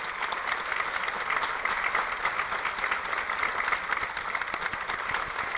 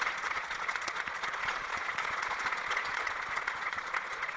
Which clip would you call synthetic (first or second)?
second